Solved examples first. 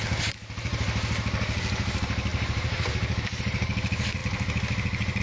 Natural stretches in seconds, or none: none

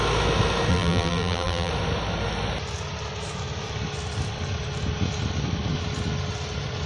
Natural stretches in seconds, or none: 0.0-0.7; 1.7-6.9

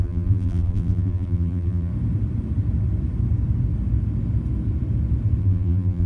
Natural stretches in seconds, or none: 1.9-5.4

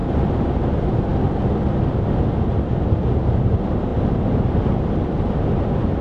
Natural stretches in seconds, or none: 0.0-6.0